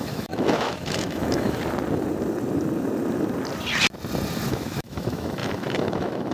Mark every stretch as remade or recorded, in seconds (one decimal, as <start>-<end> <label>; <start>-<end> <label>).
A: 0.0-1.6 remade; 1.6-4.5 recorded; 4.5-6.3 remade